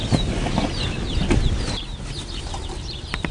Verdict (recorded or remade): recorded